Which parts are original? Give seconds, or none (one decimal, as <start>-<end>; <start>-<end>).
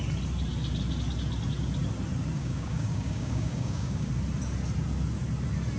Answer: 0.0-2.4; 4.1-5.8